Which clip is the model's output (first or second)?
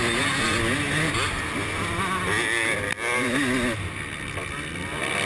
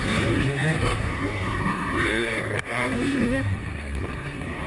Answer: second